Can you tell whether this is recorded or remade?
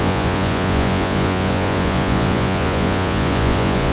remade